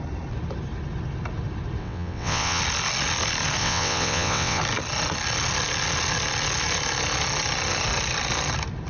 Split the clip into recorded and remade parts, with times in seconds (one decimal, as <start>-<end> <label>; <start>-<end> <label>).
0.0-1.8 recorded; 1.8-2.6 remade; 2.6-3.6 recorded; 3.6-4.6 remade; 4.6-8.9 recorded